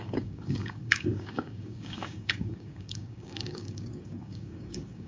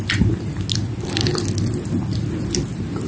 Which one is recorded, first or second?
second